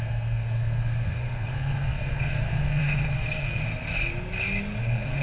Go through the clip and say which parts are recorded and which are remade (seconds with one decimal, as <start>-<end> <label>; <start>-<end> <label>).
0.0-3.6 remade; 3.6-4.8 recorded; 4.8-5.2 remade